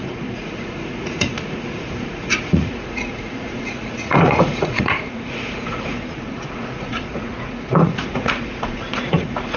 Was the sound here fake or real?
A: fake